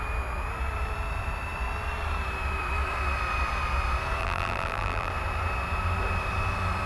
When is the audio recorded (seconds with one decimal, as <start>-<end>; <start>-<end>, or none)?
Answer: 0.0-4.2; 5.1-6.9